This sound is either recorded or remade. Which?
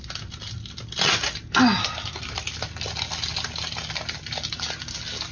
recorded